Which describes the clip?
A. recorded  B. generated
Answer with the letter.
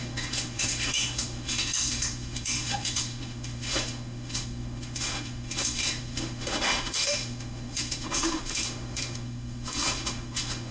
B